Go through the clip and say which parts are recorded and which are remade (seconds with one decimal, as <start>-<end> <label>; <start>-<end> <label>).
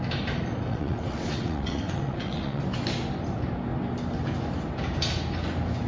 0.0-0.7 recorded; 0.7-2.6 remade; 2.6-5.9 recorded